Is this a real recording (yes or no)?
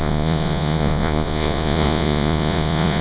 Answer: no